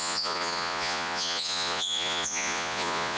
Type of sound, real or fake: fake